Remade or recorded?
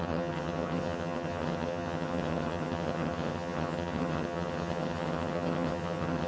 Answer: remade